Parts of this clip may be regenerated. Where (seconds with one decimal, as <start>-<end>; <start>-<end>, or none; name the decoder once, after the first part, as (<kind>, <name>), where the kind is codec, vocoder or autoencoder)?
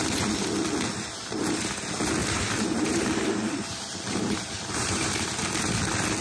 2.2-5.3 (vocoder, BigVGAN v2)